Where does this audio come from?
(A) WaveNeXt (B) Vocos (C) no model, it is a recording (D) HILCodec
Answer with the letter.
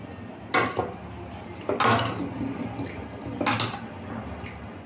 C